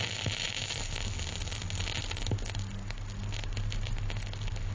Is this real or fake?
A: real